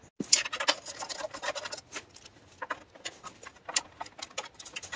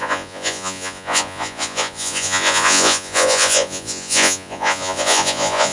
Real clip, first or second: first